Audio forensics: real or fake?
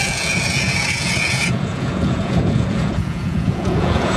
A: fake